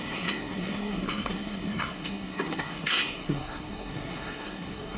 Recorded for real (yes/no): no